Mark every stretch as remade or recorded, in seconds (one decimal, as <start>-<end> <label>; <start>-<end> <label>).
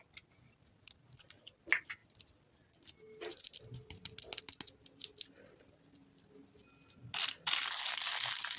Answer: 0.0-8.6 recorded